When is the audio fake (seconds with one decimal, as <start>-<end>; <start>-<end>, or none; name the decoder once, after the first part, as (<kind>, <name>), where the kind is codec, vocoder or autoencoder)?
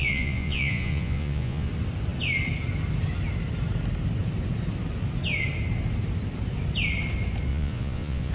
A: 0.0-1.7 (vocoder, Vocos); 7.5-8.3